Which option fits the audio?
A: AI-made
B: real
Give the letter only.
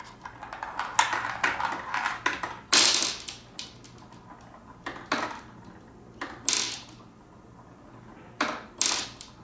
B